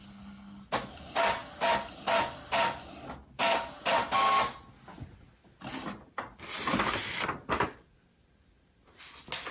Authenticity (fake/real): real